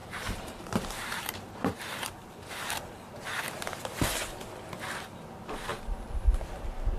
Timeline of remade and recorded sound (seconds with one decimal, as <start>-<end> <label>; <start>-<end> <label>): 0.0-2.5 remade; 2.5-7.0 recorded